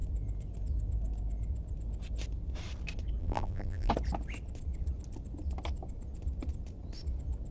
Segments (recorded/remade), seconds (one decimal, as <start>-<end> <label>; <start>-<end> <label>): 0.0-3.2 recorded; 3.2-3.9 remade; 3.9-7.5 recorded